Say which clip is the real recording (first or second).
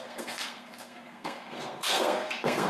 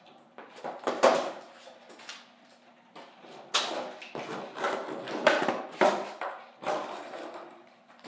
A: second